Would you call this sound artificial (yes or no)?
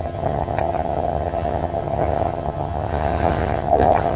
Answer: yes